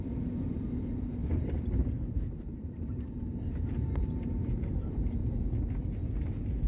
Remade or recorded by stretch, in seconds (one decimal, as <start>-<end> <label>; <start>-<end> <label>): 0.0-5.2 remade; 5.2-6.3 recorded; 6.3-6.7 remade